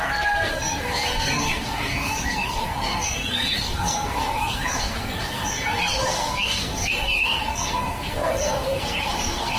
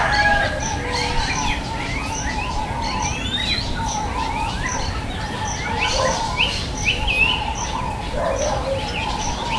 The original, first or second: second